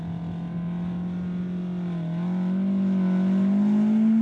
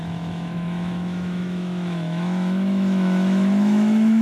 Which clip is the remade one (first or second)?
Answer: second